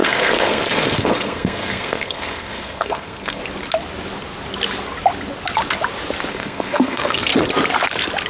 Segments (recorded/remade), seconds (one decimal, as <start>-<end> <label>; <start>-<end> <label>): 0.0-3.4 remade; 3.4-6.3 recorded; 6.3-7.3 remade; 7.3-8.3 recorded